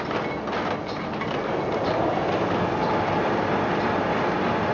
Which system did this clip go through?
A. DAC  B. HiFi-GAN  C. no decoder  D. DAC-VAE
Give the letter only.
C